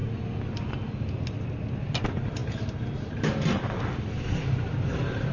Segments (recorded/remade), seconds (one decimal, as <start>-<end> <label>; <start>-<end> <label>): 0.0-1.8 recorded; 1.8-5.3 remade